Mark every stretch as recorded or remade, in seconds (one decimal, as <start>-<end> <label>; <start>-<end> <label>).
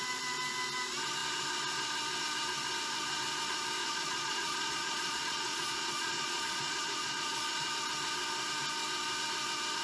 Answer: 0.0-3.8 recorded; 3.8-7.7 remade; 7.7-9.8 recorded